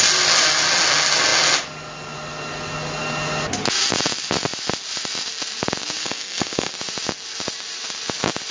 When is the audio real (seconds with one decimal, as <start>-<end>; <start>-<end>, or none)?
0.0-6.0; 6.7-8.5